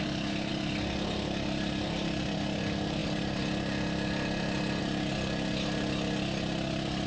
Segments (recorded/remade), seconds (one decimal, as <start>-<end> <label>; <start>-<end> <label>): 0.0-7.1 recorded

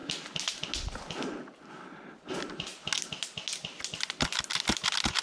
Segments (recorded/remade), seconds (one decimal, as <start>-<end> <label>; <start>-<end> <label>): 0.0-5.2 recorded

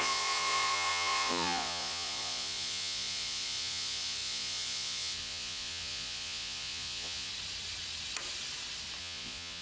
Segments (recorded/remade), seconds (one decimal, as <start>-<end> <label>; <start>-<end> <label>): 0.0-7.3 remade; 7.3-9.0 recorded; 9.0-9.6 remade

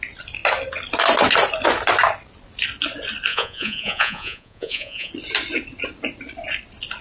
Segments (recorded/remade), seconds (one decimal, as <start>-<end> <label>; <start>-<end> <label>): 0.0-3.3 recorded; 3.3-5.1 remade; 5.1-7.0 recorded

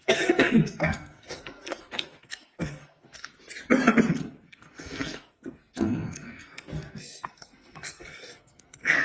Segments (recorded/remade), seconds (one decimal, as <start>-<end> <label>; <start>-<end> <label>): 0.0-3.3 remade; 3.3-4.1 recorded; 4.1-9.0 remade